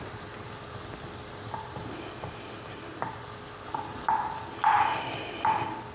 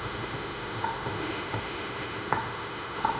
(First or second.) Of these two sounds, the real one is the first